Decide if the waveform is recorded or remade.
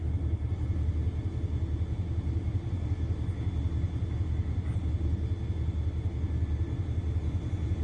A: recorded